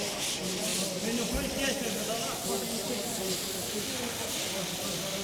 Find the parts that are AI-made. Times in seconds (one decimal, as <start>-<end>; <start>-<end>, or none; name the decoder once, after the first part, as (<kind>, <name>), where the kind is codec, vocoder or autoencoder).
none